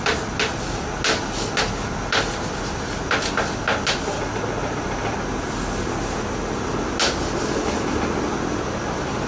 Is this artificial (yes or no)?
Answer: no